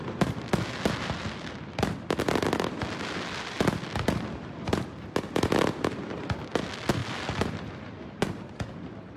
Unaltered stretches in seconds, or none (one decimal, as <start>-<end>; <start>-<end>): 0.0-7.0; 7.7-9.2